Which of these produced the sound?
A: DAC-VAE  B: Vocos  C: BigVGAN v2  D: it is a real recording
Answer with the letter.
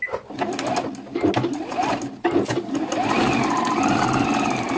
D